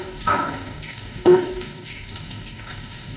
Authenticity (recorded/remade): remade